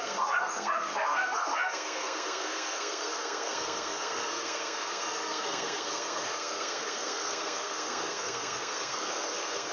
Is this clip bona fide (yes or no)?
no